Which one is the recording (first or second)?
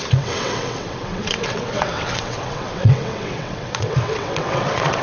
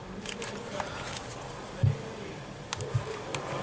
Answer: second